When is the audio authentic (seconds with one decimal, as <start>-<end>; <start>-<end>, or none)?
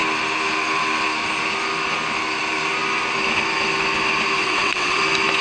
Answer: 0.0-4.4; 5.0-5.4